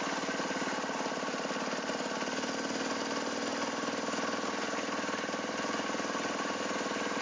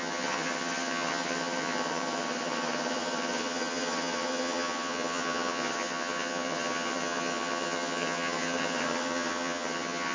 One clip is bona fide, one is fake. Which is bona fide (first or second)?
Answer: first